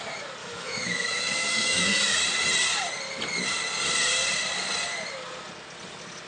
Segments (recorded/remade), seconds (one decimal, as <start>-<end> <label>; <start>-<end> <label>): 0.0-0.4 recorded; 0.4-2.0 remade; 2.0-6.3 recorded